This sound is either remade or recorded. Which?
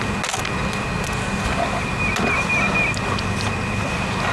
recorded